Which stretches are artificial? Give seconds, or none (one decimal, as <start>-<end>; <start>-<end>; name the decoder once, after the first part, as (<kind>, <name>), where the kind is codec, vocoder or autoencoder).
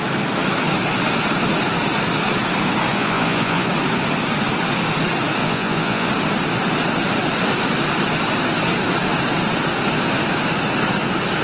2.9-3.7 (vocoder, Vocos); 5.4-6.1